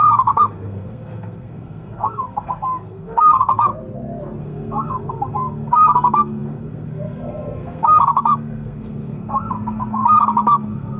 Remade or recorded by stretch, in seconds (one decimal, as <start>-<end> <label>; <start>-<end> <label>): 0.0-3.7 remade; 3.7-4.4 recorded; 4.4-11.0 remade